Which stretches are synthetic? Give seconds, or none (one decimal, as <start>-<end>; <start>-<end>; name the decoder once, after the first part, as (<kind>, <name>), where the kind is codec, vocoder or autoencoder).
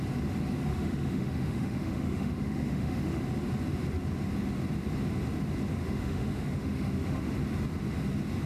0.7-3.2 (autoencoder, DAC-VAE); 5.7-7.3